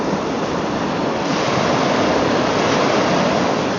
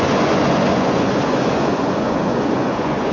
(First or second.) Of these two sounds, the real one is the first